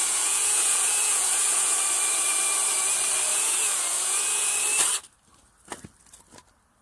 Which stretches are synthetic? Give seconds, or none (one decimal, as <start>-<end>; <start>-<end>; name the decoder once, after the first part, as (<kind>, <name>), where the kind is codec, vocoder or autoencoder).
0.0-1.8 (vocoder, Vocos); 3.3-4.5